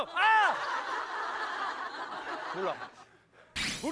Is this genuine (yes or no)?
yes